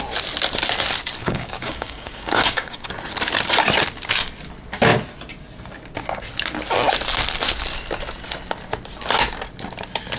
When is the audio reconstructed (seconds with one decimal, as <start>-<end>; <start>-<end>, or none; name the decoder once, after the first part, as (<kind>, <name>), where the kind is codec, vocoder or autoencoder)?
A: 1.2-2.9 (codec, DAC)